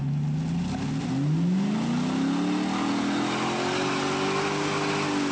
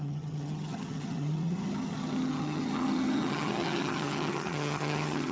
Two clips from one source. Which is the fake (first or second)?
second